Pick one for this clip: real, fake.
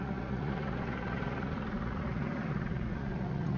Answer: fake